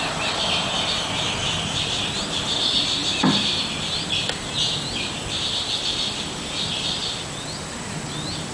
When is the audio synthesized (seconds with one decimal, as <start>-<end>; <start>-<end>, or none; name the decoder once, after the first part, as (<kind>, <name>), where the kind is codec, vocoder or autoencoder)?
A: 1.4-2.0 (vocoder, BigVGAN v2)